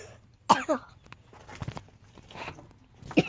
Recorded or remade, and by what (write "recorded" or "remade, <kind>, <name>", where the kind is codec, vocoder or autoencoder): recorded